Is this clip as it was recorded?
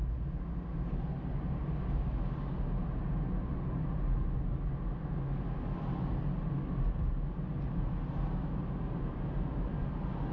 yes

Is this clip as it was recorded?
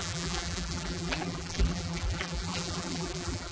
no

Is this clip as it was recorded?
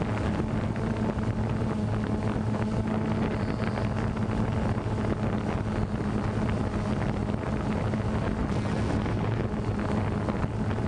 yes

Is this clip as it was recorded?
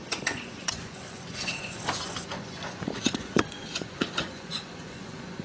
no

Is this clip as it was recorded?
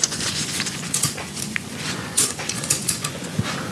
no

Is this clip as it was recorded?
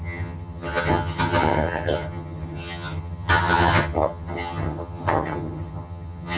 no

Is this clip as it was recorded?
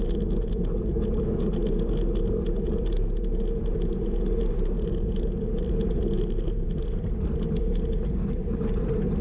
yes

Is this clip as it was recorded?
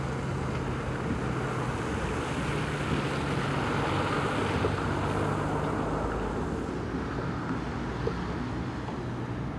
yes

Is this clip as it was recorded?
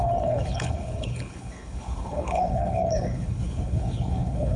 no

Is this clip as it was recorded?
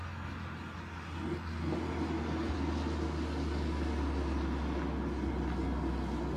yes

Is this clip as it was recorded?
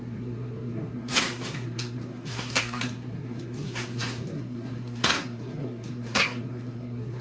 no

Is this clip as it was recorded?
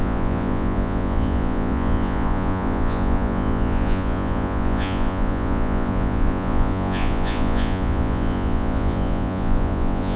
no